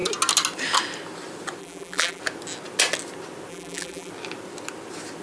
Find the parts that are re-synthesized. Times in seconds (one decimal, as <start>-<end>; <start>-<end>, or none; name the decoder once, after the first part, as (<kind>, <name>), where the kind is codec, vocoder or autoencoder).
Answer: 1.6-2.2 (vocoder, BigVGAN v2); 3.5-4.1